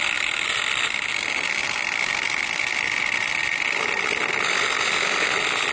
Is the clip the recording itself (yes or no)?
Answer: yes